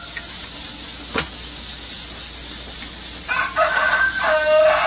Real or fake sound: real